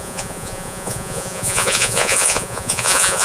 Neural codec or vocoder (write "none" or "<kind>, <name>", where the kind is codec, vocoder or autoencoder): vocoder, Vocos